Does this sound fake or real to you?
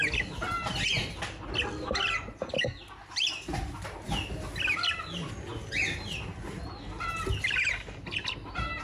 real